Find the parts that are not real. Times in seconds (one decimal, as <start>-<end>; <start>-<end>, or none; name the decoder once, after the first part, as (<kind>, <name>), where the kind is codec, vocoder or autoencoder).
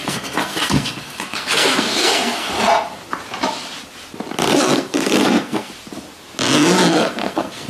0.0-2.5 (codec, SNAC); 4.5-5.7; 6.9-7.7